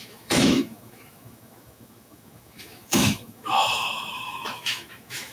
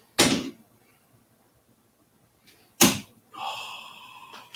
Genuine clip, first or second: second